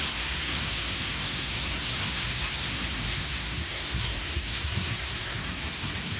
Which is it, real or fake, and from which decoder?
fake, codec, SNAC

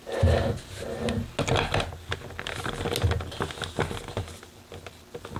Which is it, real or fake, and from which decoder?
real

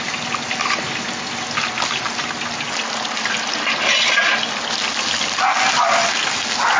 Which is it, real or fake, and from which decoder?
real